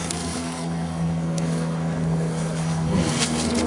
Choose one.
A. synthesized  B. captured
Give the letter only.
A